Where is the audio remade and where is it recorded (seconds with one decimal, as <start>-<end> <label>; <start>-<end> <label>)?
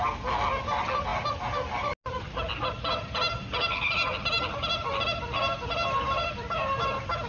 0.0-7.3 recorded